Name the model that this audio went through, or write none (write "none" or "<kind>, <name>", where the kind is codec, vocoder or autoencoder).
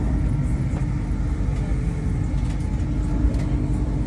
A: none